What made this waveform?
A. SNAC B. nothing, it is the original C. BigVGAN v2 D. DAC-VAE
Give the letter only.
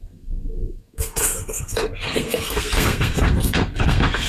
A